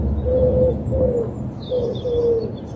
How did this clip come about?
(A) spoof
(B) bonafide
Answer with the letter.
B